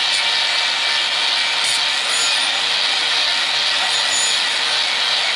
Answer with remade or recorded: recorded